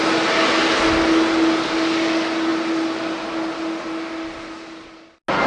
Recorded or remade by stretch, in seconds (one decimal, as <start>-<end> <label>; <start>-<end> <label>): 0.0-5.5 recorded